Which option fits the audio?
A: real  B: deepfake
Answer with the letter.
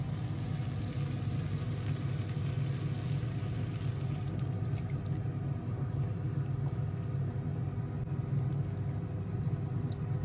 A